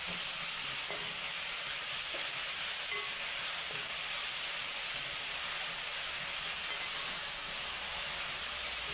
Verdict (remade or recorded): recorded